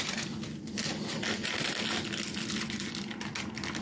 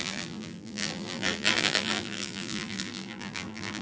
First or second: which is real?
first